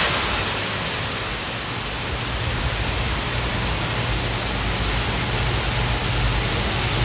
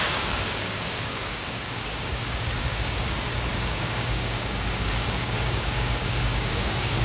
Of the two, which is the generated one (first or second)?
second